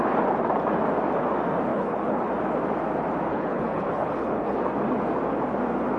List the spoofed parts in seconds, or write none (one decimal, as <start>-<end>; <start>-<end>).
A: 1.7-2.3; 3.3-4.6